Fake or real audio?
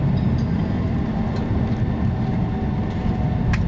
real